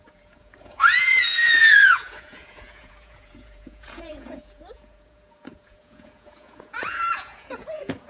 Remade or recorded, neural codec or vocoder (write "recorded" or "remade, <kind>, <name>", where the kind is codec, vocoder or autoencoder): remade, vocoder, Vocos